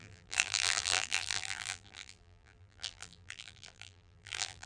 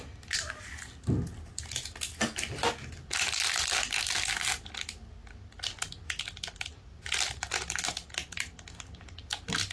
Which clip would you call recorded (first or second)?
second